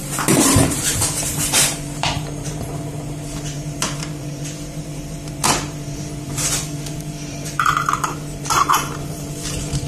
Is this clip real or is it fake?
fake